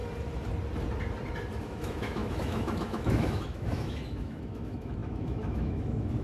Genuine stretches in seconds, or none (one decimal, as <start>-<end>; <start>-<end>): 0.0-1.6